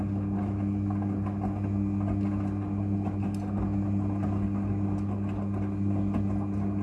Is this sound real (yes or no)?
yes